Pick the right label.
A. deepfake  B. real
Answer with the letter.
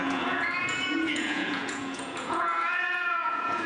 A